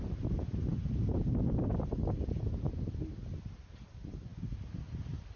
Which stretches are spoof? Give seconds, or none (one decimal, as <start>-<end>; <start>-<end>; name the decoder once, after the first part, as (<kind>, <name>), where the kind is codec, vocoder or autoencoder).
none